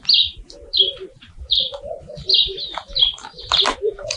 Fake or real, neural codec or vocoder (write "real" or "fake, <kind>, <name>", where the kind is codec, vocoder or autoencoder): real